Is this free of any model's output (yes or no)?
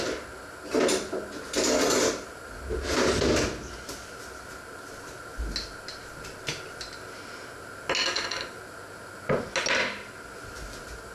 yes